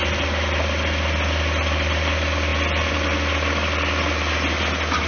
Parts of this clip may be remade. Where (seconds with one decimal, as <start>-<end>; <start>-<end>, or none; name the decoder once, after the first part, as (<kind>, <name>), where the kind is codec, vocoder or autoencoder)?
none